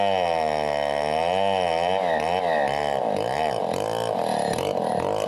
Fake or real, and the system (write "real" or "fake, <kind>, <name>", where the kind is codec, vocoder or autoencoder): real